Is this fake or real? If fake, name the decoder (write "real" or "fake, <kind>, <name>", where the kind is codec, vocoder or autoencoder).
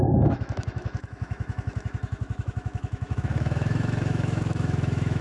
fake, autoencoder, DAC-VAE